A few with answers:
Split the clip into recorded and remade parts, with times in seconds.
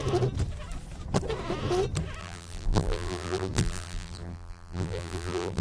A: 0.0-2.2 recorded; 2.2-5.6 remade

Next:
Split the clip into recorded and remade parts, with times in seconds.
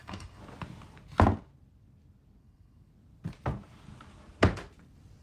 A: 0.0-0.4 remade; 0.4-2.4 recorded; 2.4-2.9 remade; 2.9-5.2 recorded